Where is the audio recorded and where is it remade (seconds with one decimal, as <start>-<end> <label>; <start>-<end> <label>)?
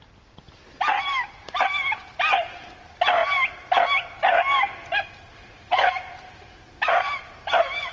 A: 0.0-7.9 recorded